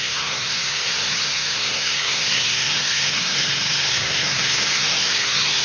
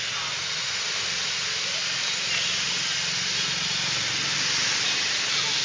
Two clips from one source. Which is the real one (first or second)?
second